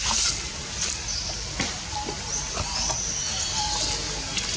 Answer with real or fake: real